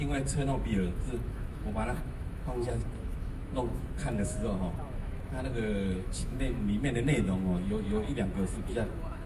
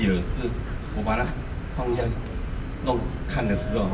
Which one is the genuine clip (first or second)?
second